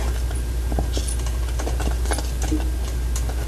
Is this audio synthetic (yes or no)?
no